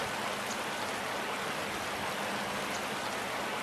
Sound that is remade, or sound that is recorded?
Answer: recorded